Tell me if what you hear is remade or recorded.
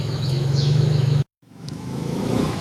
remade